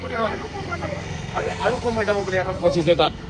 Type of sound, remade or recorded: remade